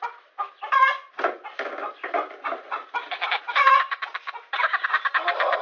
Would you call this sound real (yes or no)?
no